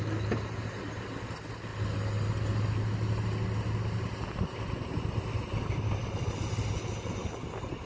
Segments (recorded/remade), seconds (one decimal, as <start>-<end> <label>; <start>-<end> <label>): 0.0-7.9 recorded